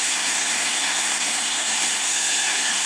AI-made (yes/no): yes